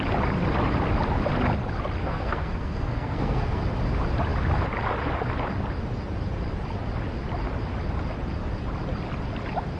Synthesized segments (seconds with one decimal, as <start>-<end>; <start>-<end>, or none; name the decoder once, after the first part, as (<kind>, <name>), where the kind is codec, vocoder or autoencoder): 2.0-3.6 (codec, SNAC)